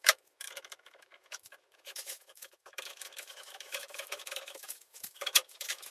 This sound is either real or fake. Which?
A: fake